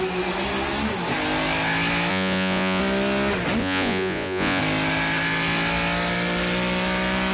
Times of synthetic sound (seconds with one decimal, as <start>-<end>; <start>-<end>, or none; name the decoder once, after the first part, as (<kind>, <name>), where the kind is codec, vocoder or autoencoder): 2.1-2.8 (vocoder, Vocos); 3.6-4.6